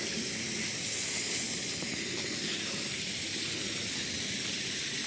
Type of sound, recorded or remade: recorded